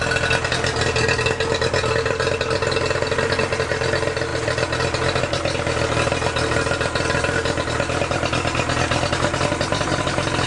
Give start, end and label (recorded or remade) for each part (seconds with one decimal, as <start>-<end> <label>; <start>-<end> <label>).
0.0-10.5 recorded